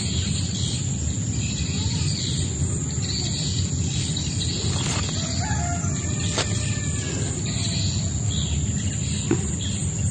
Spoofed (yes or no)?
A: no